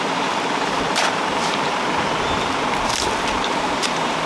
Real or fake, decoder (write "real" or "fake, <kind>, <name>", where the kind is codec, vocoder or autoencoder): fake, vocoder, BigVGAN v2